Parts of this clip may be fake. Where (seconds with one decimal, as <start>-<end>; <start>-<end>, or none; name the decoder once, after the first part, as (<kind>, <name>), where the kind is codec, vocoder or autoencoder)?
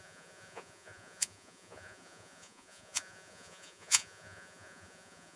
0.0-5.4 (vocoder, Vocos)